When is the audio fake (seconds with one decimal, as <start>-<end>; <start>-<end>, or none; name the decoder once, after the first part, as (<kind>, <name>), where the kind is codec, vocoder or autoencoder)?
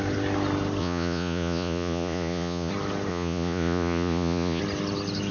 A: 0.8-2.7 (vocoder, Vocos); 3.1-4.6